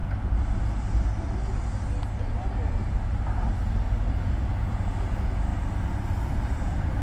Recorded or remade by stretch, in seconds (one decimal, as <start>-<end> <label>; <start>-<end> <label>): 0.0-4.2 recorded; 4.2-5.5 remade; 5.5-6.3 recorded; 6.3-7.0 remade